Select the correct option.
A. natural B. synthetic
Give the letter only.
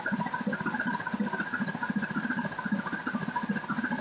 A